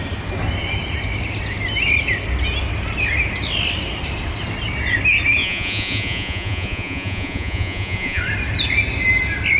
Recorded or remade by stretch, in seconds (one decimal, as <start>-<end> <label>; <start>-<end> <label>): 0.0-5.4 recorded; 5.4-8.2 remade; 8.2-9.6 recorded